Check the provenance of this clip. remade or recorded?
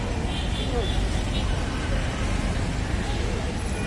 recorded